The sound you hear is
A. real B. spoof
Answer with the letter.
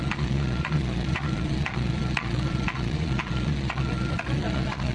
B